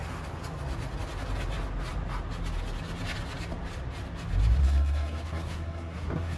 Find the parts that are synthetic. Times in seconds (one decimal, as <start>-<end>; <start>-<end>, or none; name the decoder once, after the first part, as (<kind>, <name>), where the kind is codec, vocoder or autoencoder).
4.6-6.4 (codec, SNAC)

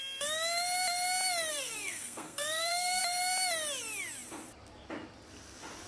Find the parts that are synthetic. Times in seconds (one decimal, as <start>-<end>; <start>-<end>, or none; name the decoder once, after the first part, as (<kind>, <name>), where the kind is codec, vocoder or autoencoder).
1.5-3.0 (codec, SNAC)